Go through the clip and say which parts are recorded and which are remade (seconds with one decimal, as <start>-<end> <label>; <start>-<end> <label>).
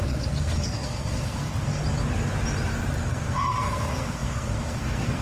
0.0-1.8 remade; 1.8-3.1 recorded; 3.1-5.2 remade